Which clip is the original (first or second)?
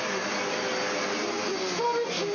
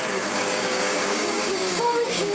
first